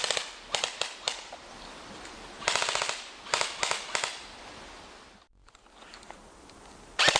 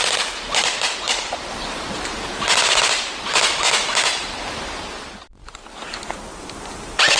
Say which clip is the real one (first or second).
first